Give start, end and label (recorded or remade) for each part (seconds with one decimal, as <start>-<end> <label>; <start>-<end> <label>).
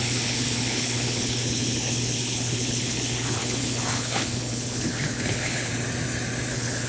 0.0-5.7 remade; 5.7-6.5 recorded; 6.5-6.9 remade